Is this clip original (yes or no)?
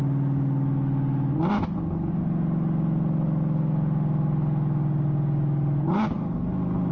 yes